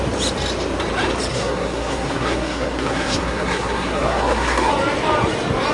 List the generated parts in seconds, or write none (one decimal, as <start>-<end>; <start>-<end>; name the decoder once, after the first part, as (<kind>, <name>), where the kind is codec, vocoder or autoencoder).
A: 1.3-4.7 (codec, SNAC)